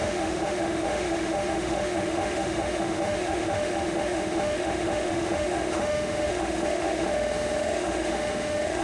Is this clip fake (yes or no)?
yes